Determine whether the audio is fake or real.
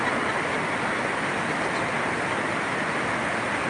real